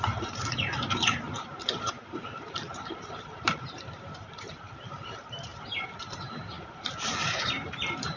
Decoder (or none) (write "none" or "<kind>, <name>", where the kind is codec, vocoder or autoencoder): vocoder, BigVGAN v2